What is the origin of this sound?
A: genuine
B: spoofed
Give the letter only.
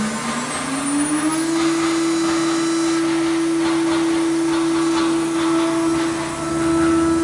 A